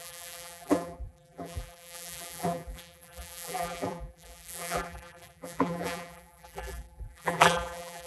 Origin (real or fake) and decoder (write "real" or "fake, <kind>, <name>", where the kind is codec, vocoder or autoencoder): fake, vocoder, BigVGAN v2